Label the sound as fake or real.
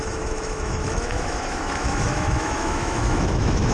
fake